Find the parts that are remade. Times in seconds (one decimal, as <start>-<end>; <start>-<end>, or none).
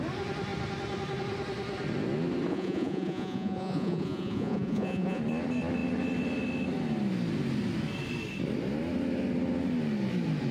2.5-5.2